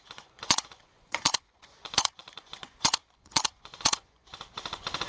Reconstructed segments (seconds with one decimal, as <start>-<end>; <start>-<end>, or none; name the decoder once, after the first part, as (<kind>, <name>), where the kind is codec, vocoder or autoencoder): 0.0-5.1 (vocoder, Vocos)